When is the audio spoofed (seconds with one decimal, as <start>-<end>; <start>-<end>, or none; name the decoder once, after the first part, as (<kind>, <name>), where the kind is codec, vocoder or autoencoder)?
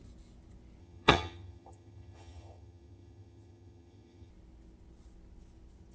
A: 0.8-4.3 (vocoder, HiFi-GAN)